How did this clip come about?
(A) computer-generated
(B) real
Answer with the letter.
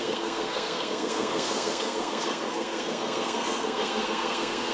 A